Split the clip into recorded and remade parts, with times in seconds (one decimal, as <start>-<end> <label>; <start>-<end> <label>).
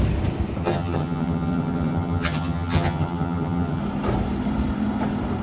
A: 0.0-0.6 recorded; 0.6-3.8 remade; 3.8-5.4 recorded